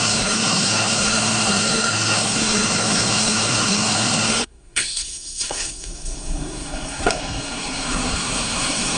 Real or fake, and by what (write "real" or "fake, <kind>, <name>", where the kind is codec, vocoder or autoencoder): fake, codec, SNAC